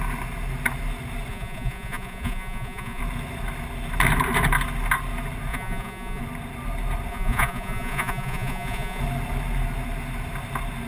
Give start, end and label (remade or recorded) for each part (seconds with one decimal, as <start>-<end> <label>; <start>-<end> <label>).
0.0-1.3 recorded; 1.3-3.0 remade; 3.0-5.5 recorded; 5.5-6.2 remade; 6.2-7.1 recorded; 7.1-9.0 remade; 9.0-10.9 recorded